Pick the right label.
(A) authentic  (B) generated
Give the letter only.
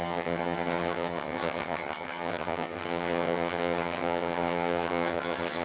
B